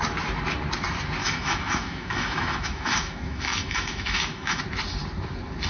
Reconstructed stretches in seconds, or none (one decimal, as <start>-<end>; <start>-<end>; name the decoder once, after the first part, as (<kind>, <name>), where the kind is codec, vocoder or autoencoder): 1.2-4.6 (autoencoder, DAC-VAE)